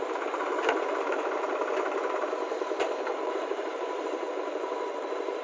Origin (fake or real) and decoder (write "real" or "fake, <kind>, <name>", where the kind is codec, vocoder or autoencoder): fake, vocoder, BigVGAN v2